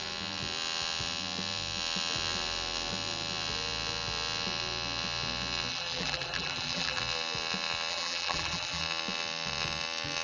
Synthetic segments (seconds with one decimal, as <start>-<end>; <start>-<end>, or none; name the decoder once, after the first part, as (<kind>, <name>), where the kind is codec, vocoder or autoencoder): 5.7-7.0 (vocoder, BigVGAN v2); 7.9-8.8